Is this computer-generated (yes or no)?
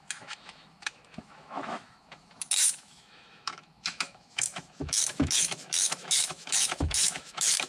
yes